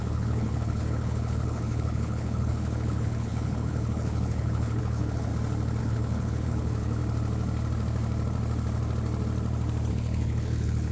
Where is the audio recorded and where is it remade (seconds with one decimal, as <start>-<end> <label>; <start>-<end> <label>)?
0.0-5.3 remade; 5.3-5.8 recorded; 5.8-7.0 remade; 7.0-9.9 recorded; 9.9-10.9 remade